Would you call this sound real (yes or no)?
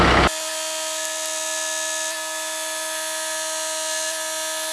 yes